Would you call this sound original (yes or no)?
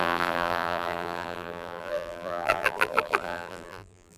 no